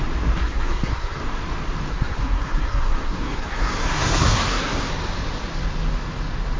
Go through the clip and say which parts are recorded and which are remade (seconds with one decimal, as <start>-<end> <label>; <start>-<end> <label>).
0.0-0.4 recorded; 0.4-1.2 remade; 1.2-1.9 recorded; 1.9-4.9 remade; 4.9-6.6 recorded